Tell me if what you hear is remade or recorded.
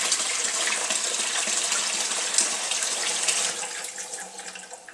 recorded